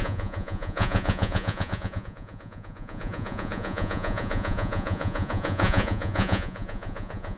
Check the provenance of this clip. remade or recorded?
remade